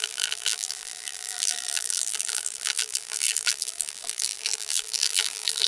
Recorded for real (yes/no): no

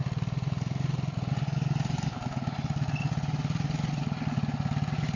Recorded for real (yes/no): yes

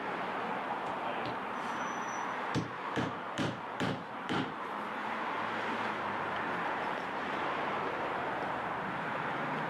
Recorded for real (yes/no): no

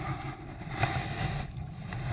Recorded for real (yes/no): yes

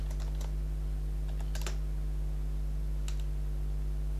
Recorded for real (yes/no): yes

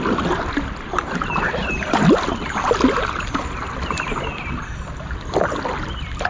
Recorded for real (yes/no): yes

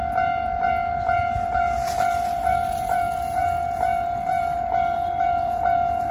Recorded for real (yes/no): no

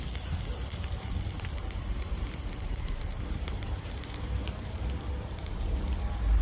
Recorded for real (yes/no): no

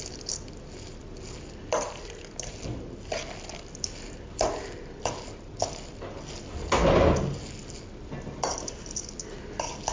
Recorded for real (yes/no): yes